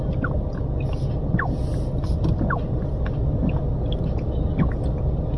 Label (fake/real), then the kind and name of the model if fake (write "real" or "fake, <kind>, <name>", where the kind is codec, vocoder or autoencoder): real